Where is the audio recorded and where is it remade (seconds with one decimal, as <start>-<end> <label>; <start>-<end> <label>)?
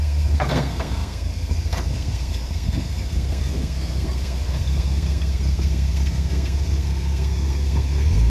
0.0-8.3 remade